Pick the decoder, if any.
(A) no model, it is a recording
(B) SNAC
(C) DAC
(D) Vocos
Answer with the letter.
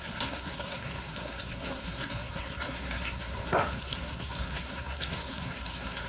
B